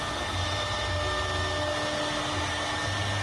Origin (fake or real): real